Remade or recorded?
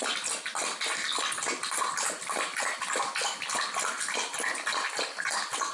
recorded